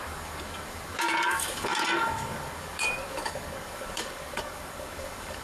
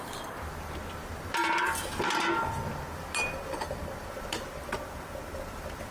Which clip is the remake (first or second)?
first